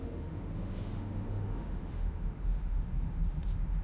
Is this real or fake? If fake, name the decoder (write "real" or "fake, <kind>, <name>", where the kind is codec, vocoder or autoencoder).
fake, autoencoder, DAC-VAE